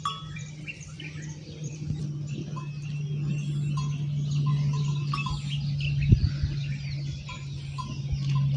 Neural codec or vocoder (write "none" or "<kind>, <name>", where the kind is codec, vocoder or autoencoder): none